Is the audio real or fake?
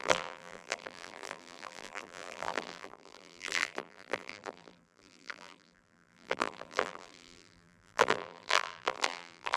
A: fake